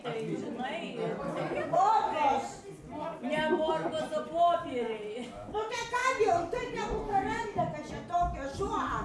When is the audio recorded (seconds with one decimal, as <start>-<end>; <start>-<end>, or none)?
0.0-9.0